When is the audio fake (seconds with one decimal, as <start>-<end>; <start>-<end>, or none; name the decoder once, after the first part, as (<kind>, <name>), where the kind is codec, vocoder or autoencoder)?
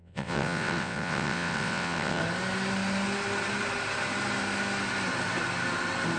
0.0-2.2 (vocoder, WaveNeXt)